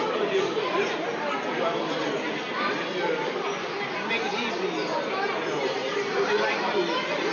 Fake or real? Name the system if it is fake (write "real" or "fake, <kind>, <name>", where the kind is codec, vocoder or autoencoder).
real